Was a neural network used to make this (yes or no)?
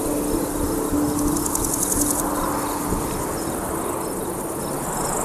no